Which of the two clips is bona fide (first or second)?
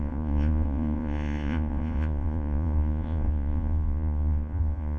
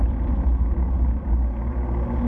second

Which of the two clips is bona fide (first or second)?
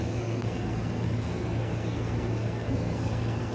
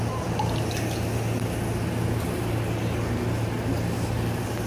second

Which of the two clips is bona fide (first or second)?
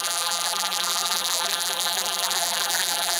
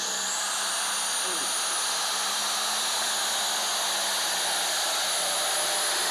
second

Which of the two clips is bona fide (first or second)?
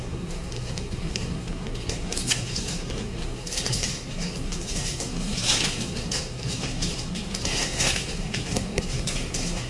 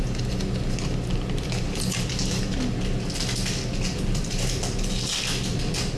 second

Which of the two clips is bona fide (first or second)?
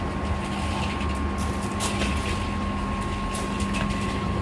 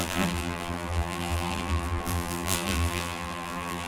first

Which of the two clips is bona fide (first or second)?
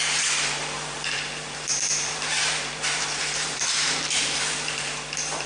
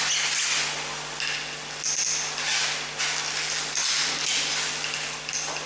second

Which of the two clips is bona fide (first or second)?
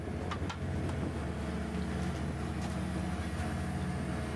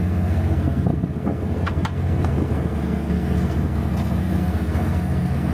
first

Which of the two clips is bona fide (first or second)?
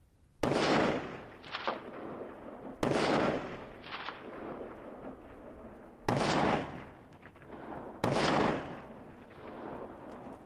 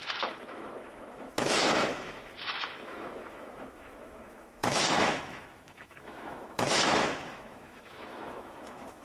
first